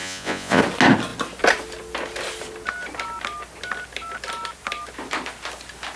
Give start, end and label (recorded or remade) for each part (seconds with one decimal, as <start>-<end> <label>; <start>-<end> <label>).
0.0-0.6 remade; 0.6-6.0 recorded